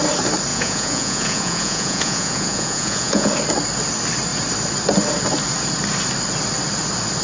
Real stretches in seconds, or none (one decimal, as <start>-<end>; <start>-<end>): 0.0-0.5; 3.3-7.2